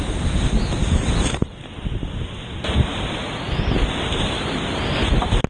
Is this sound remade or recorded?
recorded